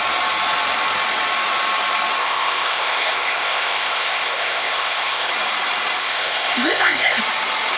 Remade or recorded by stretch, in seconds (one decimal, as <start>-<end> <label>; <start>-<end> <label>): 0.0-2.2 recorded; 2.2-5.3 remade; 5.3-6.0 recorded; 6.0-7.2 remade; 7.2-7.8 recorded